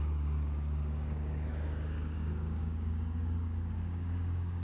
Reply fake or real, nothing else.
fake